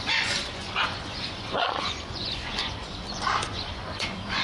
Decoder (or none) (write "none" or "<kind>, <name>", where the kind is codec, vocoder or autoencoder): vocoder, Vocos